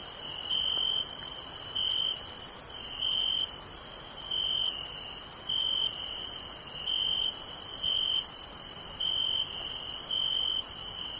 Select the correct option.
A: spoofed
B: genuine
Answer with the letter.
B